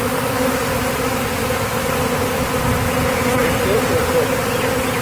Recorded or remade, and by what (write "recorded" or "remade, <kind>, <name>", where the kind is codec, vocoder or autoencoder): recorded